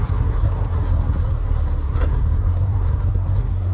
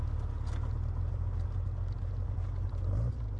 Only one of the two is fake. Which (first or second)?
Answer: first